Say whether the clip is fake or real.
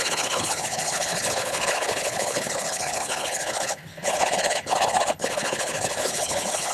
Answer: fake